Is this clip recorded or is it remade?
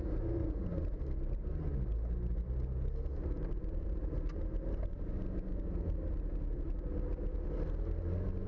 recorded